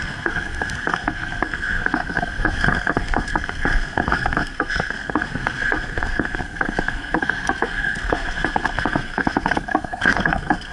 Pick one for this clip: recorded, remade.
remade